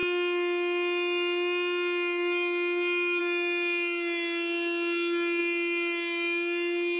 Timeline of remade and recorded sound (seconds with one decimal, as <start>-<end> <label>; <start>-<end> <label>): 0.0-7.0 recorded